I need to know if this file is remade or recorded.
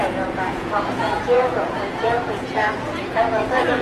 remade